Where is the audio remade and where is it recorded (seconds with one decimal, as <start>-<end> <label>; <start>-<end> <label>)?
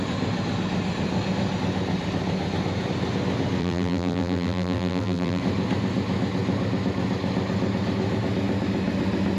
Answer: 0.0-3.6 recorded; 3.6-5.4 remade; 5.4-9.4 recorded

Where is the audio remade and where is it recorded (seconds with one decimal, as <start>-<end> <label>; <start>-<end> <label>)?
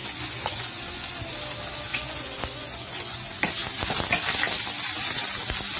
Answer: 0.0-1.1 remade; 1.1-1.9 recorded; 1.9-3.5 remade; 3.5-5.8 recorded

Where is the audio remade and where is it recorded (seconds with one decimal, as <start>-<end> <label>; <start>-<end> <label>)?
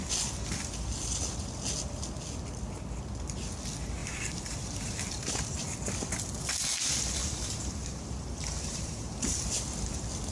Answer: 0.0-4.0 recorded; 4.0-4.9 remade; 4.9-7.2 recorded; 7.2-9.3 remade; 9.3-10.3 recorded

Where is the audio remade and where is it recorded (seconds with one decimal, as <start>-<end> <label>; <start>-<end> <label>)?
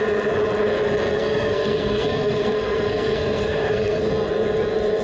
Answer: 0.0-1.1 recorded; 1.1-4.1 remade; 4.1-5.0 recorded